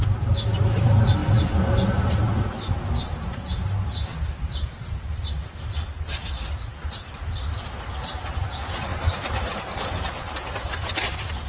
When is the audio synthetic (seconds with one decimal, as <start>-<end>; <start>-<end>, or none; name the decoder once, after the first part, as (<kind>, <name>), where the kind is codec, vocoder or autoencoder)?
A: none